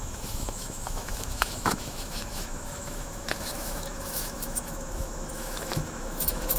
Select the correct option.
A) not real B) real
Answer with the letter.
A